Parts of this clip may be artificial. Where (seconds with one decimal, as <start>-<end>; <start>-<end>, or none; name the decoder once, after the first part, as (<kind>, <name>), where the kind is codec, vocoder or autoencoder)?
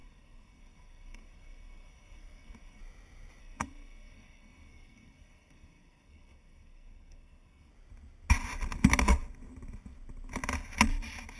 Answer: 0.0-2.8 (codec, SNAC); 3.4-7.7